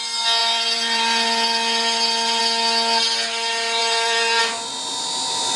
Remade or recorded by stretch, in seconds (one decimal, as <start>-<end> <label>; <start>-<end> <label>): 0.0-0.4 recorded; 0.4-2.4 remade; 2.4-3.8 recorded; 3.8-4.4 remade; 4.4-5.6 recorded